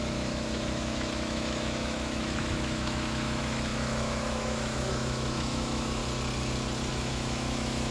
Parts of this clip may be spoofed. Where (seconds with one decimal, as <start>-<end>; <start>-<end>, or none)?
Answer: 0.0-6.0; 6.9-7.9